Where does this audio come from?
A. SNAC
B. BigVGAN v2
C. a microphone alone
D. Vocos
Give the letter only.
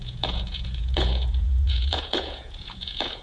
D